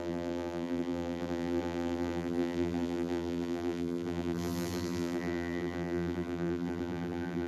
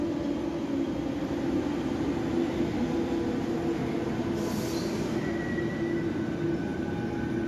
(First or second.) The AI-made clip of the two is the first